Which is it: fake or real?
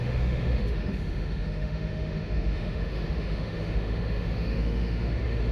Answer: fake